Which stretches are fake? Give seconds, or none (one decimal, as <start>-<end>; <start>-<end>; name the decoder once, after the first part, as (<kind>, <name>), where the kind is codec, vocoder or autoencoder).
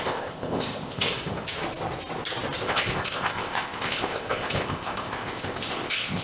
0.0-1.1 (codec, ZipCodec); 2.6-6.2